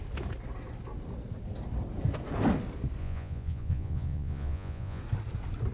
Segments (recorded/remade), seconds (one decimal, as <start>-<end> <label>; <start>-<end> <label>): 0.0-3.0 recorded; 3.0-5.0 remade; 5.0-5.7 recorded